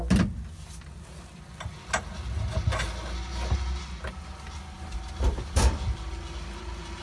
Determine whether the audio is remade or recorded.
recorded